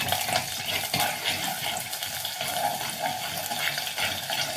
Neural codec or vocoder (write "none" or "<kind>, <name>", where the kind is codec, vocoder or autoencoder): none